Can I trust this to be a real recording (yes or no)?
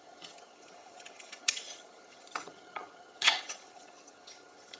no